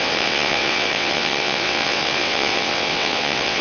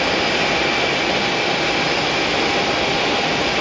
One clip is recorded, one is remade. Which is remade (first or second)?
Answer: first